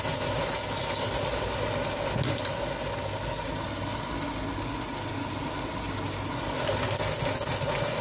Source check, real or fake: real